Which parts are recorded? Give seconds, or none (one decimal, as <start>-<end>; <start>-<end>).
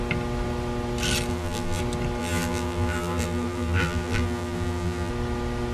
0.0-1.3; 1.8-2.2; 5.1-5.7